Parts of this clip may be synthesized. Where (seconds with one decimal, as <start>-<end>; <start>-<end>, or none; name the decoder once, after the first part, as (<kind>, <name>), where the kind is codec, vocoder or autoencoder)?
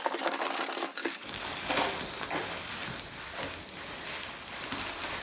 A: 1.0-1.7 (codec, DAC)